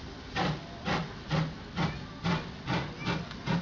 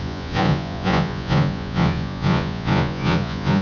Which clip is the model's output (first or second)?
second